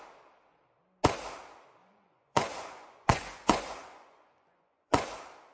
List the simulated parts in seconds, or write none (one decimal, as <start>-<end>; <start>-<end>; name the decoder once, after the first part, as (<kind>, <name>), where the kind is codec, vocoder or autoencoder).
1.8-5.1 (vocoder, Vocos)